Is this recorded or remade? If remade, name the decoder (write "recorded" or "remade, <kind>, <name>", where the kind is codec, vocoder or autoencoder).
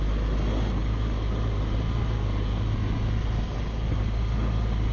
recorded